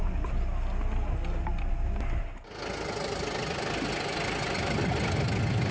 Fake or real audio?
real